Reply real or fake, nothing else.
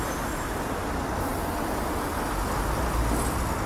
real